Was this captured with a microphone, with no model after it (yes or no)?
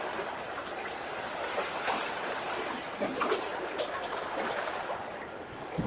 no